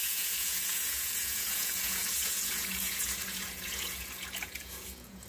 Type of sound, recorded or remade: remade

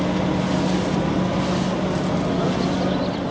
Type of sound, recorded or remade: recorded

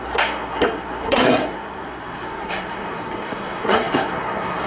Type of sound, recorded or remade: remade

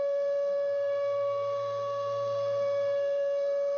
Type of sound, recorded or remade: remade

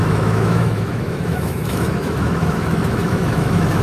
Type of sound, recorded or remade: remade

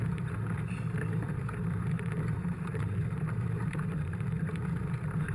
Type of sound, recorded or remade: remade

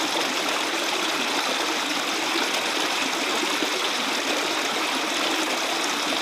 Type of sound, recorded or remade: recorded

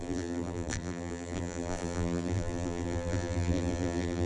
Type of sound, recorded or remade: remade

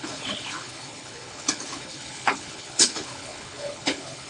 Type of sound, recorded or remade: remade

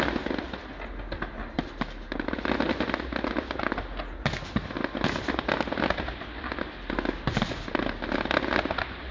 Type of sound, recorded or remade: recorded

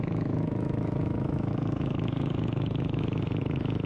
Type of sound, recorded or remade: remade